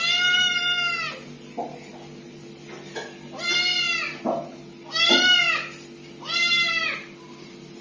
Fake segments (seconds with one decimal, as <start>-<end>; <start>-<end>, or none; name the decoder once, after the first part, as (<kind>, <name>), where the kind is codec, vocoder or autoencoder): none